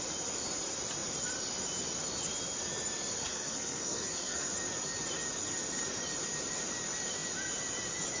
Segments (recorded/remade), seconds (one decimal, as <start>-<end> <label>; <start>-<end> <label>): 0.0-3.2 recorded; 3.2-4.5 remade; 4.5-8.2 recorded